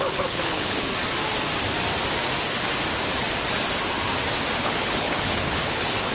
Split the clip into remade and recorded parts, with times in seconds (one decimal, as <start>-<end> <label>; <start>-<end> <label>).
0.0-0.9 remade; 0.9-4.6 recorded; 4.6-6.1 remade